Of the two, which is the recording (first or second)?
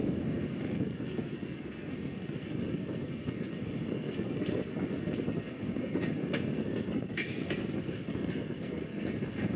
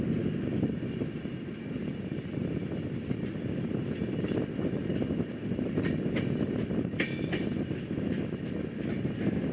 second